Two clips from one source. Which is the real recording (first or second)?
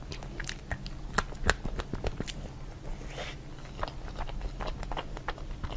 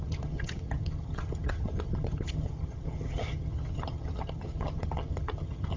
first